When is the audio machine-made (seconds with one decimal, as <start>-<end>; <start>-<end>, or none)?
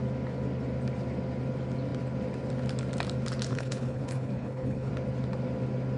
3.5-4.9